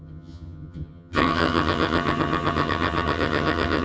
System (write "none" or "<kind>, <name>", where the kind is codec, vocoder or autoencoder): vocoder, HiFi-GAN